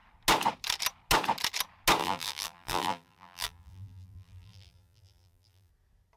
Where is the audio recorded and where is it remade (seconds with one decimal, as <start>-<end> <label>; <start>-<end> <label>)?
0.0-2.0 recorded; 2.0-5.7 remade; 5.7-6.2 recorded